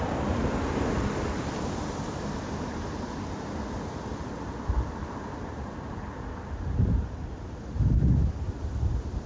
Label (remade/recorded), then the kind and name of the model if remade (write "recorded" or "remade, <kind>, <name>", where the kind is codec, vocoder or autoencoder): recorded